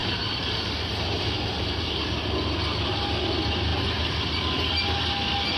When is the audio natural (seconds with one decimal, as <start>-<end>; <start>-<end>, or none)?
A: 1.9-5.6